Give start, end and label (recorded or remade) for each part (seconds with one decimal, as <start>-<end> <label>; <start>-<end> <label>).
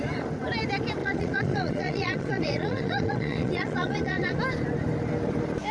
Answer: 0.0-1.0 recorded; 1.0-4.4 remade; 4.4-5.7 recorded